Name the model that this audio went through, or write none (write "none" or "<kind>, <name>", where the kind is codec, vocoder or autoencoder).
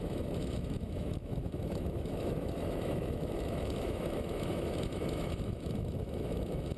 autoencoder, DAC-VAE